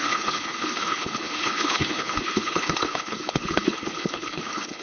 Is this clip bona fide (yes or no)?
no